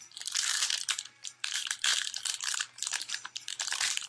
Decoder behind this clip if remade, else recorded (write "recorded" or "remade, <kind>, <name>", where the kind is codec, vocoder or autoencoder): remade, vocoder, BigVGAN v2